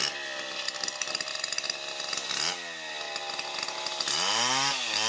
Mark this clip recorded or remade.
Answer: recorded